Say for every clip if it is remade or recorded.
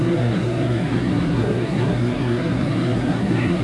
remade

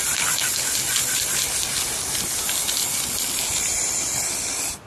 recorded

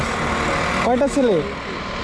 recorded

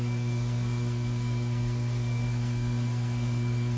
remade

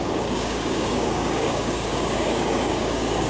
remade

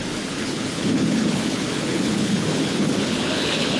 remade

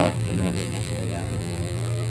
remade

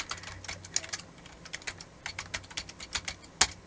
recorded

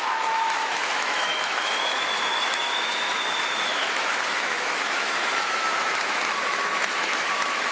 remade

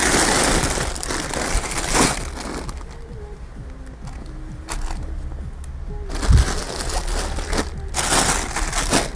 recorded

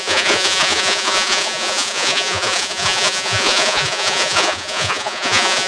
remade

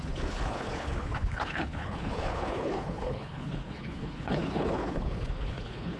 remade